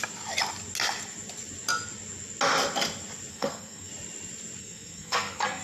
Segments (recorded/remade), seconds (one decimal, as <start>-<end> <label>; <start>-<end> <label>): 0.0-3.3 recorded; 3.3-3.9 remade; 3.9-4.6 recorded; 4.6-5.6 remade